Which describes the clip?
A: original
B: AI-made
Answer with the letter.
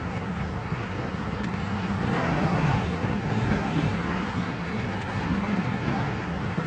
B